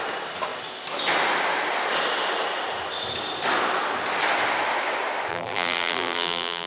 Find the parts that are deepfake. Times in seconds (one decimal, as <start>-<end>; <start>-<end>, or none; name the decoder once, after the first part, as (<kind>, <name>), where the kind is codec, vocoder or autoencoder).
5.3-6.7 (vocoder, BigVGAN v2)